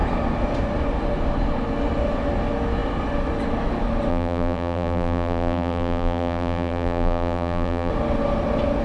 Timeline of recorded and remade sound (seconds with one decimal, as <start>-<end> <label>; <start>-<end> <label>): 0.0-4.1 recorded; 4.1-7.9 remade; 7.9-8.8 recorded